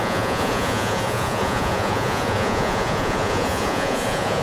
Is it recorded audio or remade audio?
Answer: remade